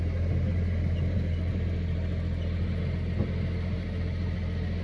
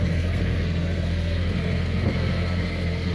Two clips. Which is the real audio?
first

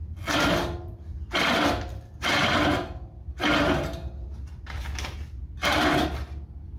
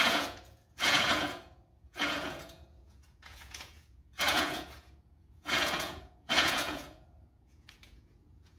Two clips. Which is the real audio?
first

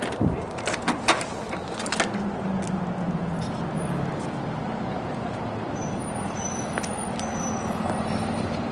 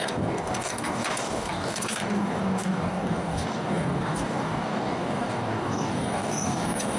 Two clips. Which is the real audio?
first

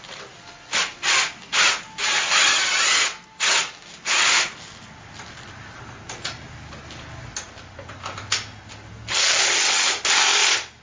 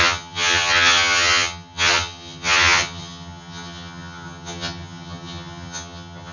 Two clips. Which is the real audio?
first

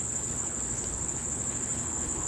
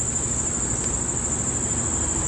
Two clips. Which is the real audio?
second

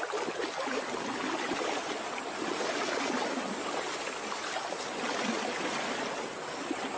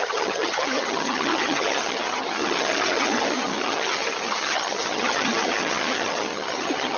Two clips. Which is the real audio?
first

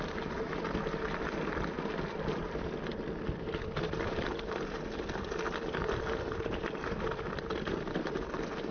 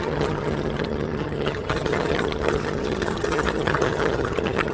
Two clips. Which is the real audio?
first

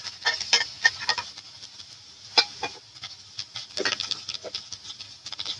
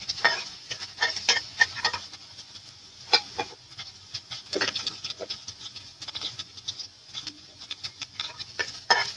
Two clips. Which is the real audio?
first